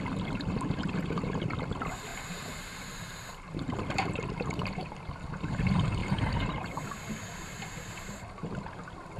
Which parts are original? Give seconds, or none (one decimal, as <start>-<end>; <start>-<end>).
0.0-2.1; 5.0-6.0; 7.1-9.2